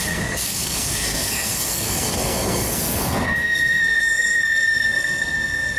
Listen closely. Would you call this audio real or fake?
fake